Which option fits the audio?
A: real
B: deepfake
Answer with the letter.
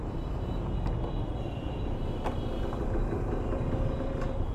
A